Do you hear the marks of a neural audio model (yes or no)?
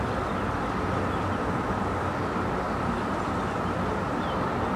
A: yes